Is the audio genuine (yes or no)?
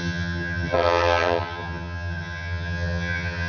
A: no